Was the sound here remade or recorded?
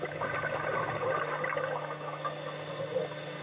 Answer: recorded